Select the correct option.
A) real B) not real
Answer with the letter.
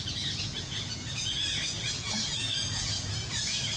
B